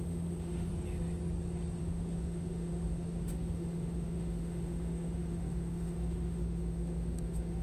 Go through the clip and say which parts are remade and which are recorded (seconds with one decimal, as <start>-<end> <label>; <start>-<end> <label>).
0.0-0.7 remade; 0.7-1.8 recorded; 1.8-7.6 remade